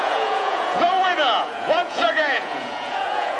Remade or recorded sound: remade